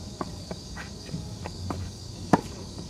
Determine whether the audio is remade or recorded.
remade